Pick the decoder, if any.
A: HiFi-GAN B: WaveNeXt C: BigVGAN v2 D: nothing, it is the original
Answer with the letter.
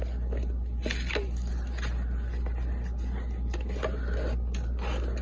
D